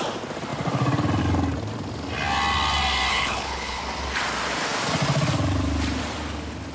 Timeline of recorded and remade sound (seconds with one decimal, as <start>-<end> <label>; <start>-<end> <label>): 0.0-3.1 recorded; 3.1-3.8 remade; 3.8-6.7 recorded

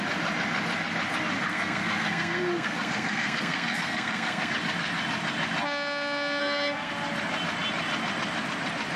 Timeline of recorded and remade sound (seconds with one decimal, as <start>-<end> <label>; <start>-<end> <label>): 0.0-1.5 recorded; 1.5-4.5 remade; 4.5-6.4 recorded; 6.4-6.9 remade; 6.9-9.0 recorded

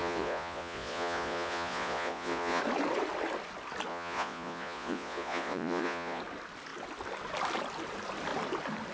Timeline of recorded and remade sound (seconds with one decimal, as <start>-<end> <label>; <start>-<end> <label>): 0.0-2.6 remade; 2.6-3.9 recorded; 3.9-6.2 remade; 6.2-8.9 recorded